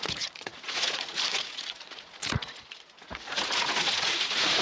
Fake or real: fake